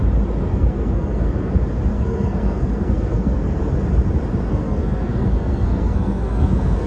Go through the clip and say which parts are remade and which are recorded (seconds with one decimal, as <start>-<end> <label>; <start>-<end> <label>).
0.0-0.5 recorded; 0.5-1.5 remade; 1.5-1.9 recorded; 1.9-3.6 remade; 3.6-4.5 recorded; 4.5-6.9 remade